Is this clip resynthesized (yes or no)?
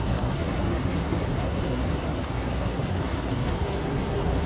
yes